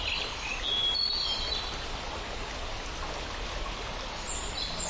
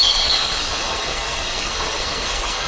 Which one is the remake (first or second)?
second